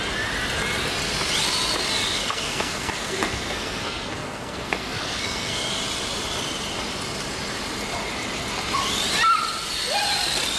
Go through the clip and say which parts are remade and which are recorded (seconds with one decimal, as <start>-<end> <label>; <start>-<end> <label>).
0.0-2.1 recorded; 2.1-5.7 remade; 5.7-10.6 recorded